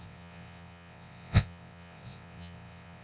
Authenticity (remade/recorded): remade